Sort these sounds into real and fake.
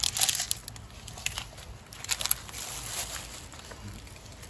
real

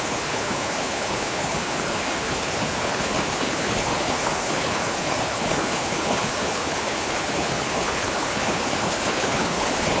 fake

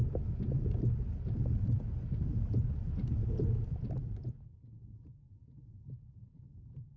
real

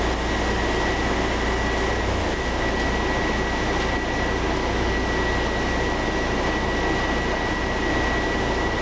real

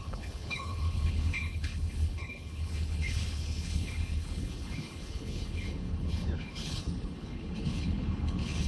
fake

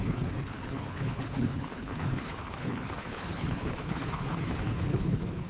fake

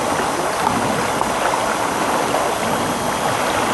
real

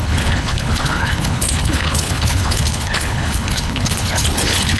fake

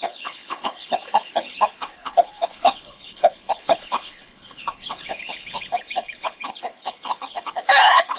fake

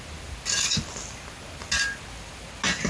real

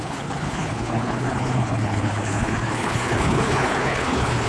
fake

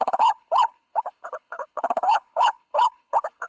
fake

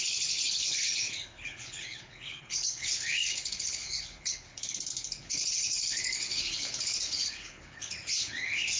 fake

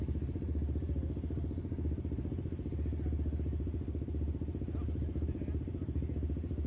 real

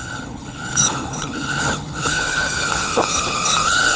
fake